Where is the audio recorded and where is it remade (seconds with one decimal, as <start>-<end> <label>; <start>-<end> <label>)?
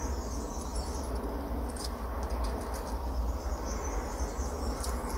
0.0-5.2 recorded